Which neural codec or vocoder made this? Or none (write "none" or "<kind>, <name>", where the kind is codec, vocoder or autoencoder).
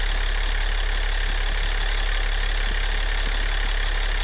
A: none